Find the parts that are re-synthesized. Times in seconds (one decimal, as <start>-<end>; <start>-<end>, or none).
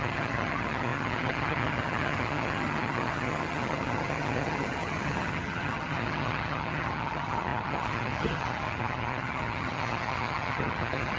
0.0-11.2